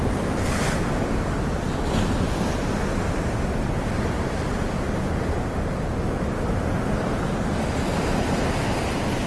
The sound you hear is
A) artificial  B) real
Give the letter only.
B